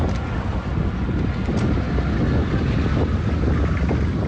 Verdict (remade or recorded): recorded